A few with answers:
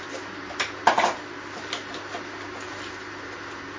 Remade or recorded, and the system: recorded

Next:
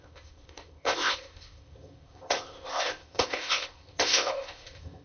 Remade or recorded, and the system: remade, codec, ZipCodec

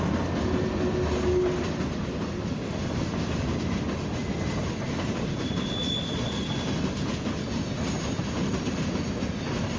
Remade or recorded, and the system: recorded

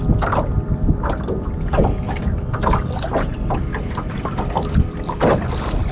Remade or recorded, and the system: recorded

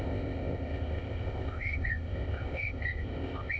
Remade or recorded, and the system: remade, codec, ZipCodec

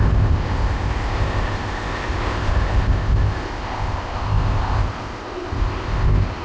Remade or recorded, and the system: remade, codec, ZipCodec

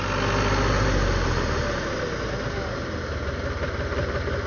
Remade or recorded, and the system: recorded